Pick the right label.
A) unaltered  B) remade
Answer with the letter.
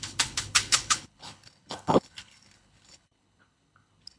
B